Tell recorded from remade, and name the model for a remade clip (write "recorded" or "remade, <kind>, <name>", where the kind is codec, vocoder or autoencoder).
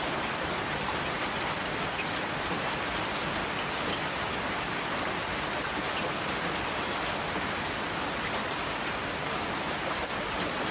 recorded